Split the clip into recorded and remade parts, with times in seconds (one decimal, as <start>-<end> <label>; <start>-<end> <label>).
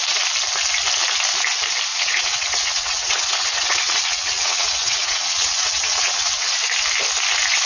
0.0-1.9 recorded; 1.9-6.5 remade; 6.5-7.7 recorded